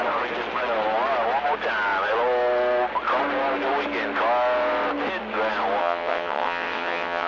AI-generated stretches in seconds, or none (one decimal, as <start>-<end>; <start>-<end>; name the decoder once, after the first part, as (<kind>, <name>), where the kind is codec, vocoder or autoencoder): 5.8-7.3 (vocoder, WaveNeXt)